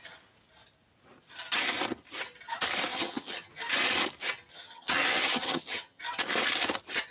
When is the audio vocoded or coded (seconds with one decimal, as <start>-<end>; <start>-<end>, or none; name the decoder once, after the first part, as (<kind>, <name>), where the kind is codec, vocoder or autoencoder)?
2.9-3.5 (vocoder, HiFi-GAN); 4.5-6.0